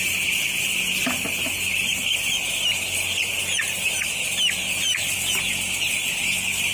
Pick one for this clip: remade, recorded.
recorded